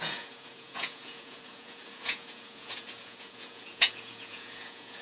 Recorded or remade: remade